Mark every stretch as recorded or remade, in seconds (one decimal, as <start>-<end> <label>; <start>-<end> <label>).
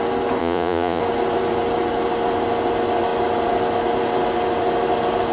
0.0-0.4 recorded; 0.4-1.0 remade; 1.0-5.3 recorded